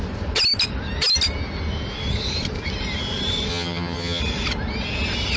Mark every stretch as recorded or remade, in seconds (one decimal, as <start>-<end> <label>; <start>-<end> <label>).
0.0-3.5 recorded; 3.5-4.2 remade; 4.2-5.4 recorded